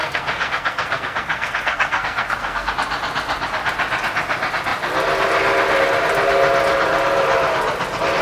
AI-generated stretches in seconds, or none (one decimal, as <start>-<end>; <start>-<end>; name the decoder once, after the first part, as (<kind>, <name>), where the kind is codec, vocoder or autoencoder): 0.0-2.7 (codec, SNAC)